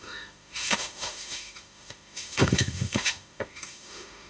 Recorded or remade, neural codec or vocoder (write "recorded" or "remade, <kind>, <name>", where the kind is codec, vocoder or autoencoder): remade, autoencoder, DAC-VAE